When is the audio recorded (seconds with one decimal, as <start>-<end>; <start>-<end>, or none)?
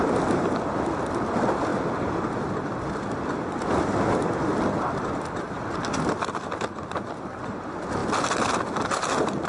0.0-9.5